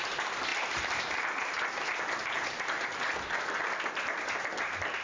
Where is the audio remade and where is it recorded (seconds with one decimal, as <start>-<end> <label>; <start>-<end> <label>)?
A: 0.0-5.0 recorded